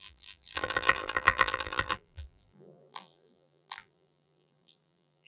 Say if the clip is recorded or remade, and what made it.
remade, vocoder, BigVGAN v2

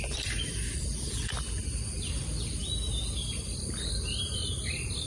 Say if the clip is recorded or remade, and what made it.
remade, vocoder, BigVGAN v2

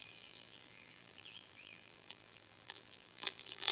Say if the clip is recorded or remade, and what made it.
remade, vocoder, BigVGAN v2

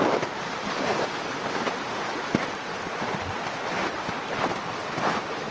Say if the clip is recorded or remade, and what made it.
recorded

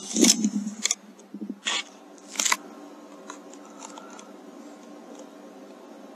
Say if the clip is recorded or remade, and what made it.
recorded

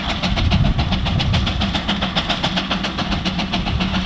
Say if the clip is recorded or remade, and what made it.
recorded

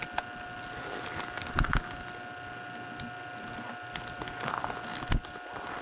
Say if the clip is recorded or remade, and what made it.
recorded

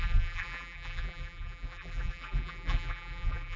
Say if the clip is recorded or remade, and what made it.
remade, vocoder, BigVGAN v2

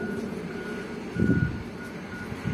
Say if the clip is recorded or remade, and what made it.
recorded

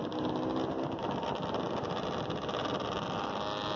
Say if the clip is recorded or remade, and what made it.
recorded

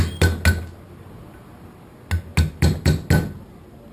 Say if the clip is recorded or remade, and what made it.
recorded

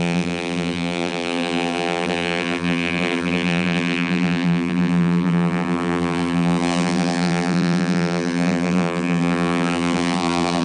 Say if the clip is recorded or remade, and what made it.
remade, vocoder, BigVGAN v2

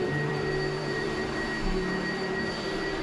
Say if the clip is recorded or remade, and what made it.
remade, vocoder, BigVGAN v2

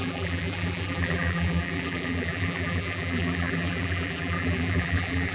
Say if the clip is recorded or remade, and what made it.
remade, vocoder, BigVGAN v2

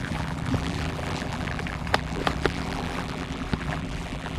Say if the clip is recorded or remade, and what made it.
remade, vocoder, BigVGAN v2